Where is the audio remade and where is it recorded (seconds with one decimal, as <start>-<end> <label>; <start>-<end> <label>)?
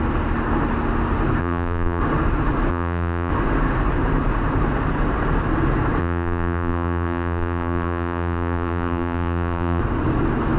0.0-1.4 recorded; 1.4-2.0 remade; 2.0-2.7 recorded; 2.7-3.3 remade; 3.3-6.0 recorded; 6.0-9.8 remade; 9.8-10.6 recorded